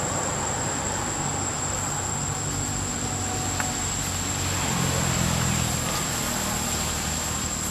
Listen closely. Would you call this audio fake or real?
real